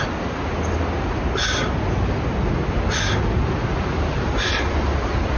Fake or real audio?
real